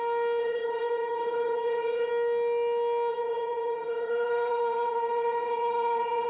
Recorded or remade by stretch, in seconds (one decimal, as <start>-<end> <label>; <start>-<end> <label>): 0.0-0.4 recorded; 0.4-2.1 remade; 2.1-3.1 recorded; 3.1-6.3 remade